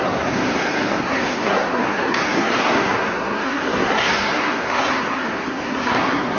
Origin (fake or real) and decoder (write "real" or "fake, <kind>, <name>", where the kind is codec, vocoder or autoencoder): fake, codec, SNAC